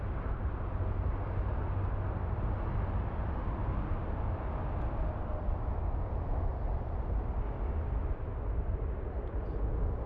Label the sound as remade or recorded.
recorded